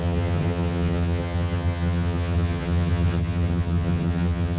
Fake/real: fake